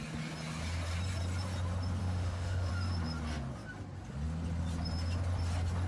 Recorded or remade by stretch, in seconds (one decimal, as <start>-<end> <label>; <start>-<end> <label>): 0.0-2.0 recorded; 2.0-2.7 remade; 2.7-5.9 recorded